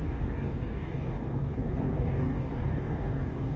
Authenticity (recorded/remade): remade